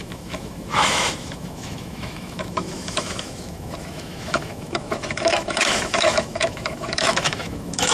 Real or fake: fake